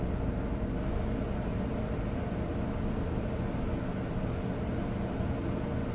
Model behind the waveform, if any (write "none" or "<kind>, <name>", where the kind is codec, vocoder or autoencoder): none